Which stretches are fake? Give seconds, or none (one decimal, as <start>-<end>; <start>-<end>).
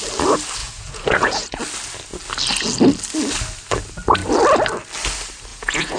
0.6-1.6; 5.5-6.0